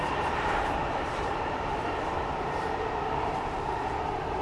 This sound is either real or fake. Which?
fake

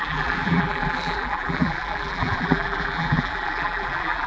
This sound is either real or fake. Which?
fake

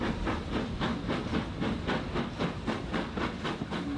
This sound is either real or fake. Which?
real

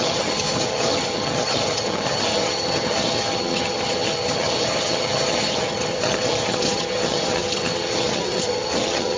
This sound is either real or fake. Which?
fake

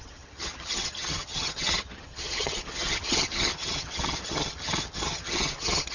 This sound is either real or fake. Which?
fake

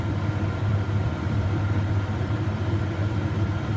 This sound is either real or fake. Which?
fake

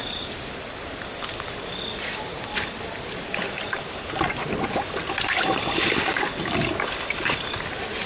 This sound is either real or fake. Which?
real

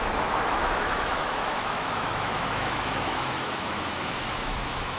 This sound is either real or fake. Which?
fake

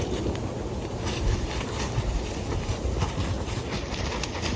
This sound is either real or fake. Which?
real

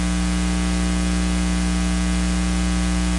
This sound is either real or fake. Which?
real